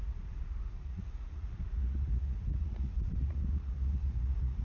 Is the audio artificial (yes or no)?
yes